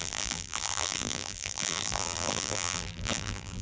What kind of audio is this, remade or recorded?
remade